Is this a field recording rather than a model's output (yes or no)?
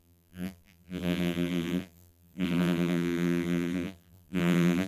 no